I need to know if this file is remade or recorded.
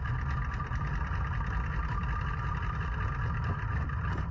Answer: remade